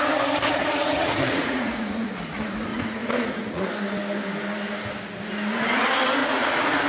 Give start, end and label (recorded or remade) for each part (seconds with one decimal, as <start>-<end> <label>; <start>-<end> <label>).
0.0-0.5 recorded; 0.5-2.1 remade; 2.1-2.7 recorded; 2.7-3.7 remade; 3.7-6.2 recorded; 6.2-6.9 remade